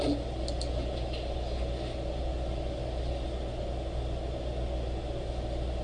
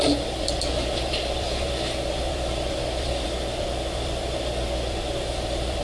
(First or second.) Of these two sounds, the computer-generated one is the second